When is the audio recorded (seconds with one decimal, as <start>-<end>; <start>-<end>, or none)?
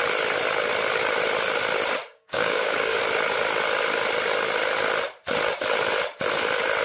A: 0.0-2.0; 3.0-6.8